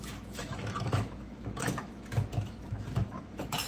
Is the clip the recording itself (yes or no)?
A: no